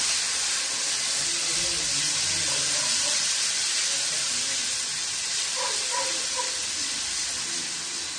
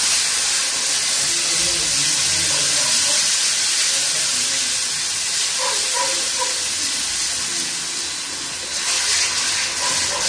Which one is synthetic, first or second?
first